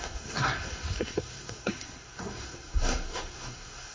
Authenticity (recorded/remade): remade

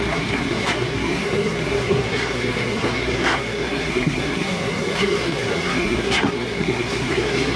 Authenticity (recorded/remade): remade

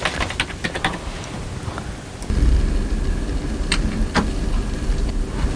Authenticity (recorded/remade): recorded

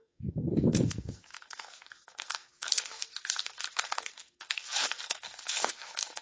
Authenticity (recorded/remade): remade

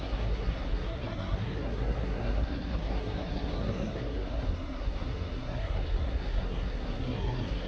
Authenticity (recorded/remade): remade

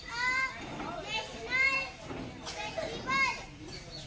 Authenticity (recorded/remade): recorded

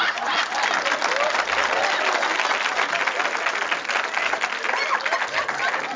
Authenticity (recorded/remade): recorded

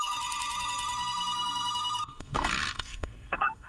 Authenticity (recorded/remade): remade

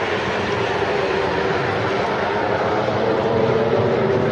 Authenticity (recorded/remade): recorded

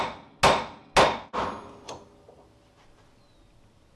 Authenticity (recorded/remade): recorded